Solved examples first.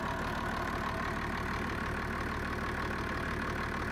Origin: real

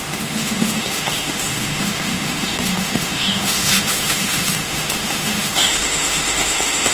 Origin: fake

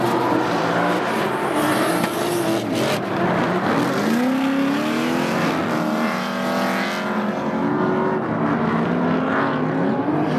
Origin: real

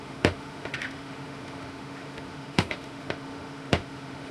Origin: fake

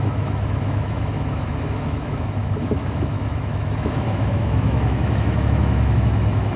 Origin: fake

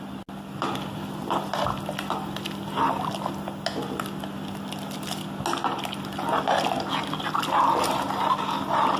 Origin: real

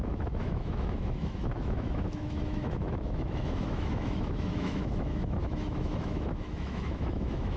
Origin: fake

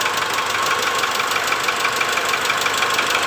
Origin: real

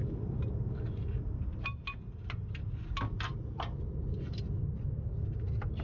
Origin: real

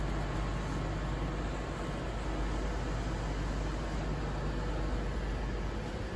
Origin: real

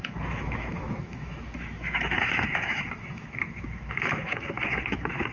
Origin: fake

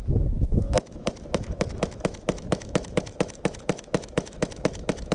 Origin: fake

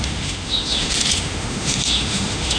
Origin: fake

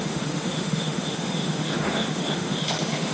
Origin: fake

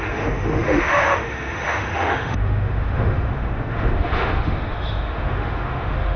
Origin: fake